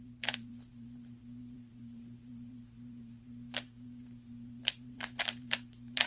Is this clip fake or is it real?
fake